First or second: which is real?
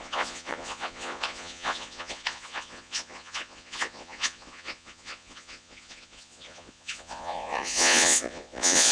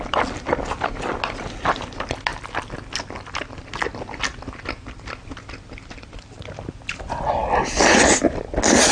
second